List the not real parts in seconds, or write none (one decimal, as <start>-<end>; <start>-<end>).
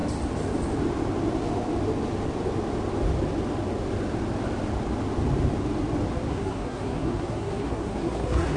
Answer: 6.3-8.6